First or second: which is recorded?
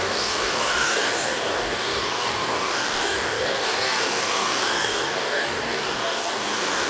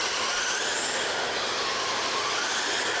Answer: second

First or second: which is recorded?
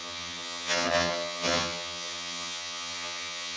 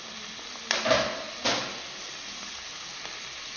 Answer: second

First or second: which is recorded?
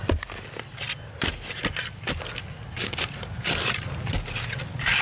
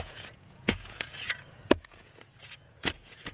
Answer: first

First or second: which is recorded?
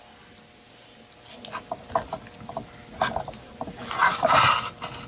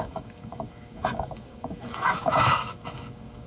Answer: first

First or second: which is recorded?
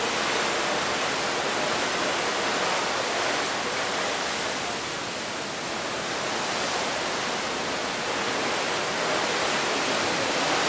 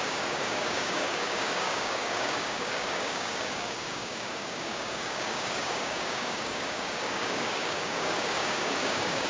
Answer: first